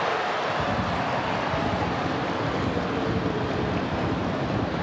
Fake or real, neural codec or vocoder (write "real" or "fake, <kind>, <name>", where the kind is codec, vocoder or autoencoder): real